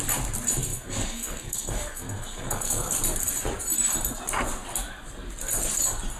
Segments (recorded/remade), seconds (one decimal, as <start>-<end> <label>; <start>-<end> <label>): 0.0-0.7 recorded; 0.7-2.9 remade; 2.9-6.2 recorded